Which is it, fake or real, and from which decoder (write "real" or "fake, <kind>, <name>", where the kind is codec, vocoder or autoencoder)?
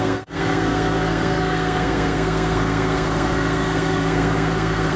fake, codec, SNAC